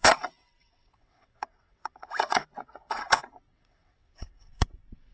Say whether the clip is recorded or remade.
remade